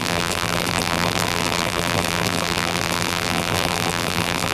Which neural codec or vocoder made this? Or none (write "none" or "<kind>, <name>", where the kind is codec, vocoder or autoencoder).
vocoder, BigVGAN v2